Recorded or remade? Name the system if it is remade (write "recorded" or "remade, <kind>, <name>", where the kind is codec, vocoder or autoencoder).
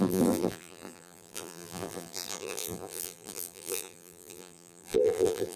remade, vocoder, BigVGAN v2